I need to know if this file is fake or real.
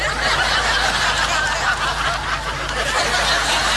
real